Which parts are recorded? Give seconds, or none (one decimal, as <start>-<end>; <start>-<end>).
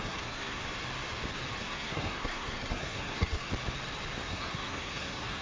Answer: 0.6-1.6; 3.5-4.3